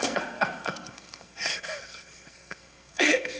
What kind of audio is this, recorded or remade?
remade